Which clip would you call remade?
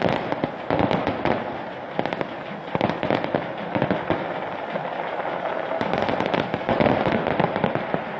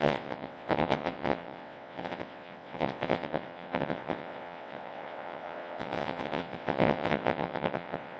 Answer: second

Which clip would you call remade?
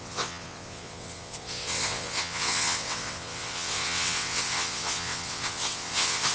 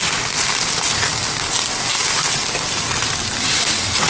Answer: first